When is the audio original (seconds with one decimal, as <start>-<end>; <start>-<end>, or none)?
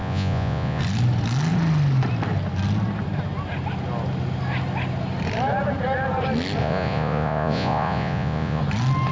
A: 0.8-6.6; 8.6-9.1